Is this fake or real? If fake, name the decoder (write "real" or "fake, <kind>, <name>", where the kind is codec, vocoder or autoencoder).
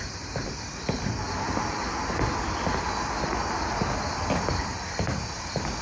real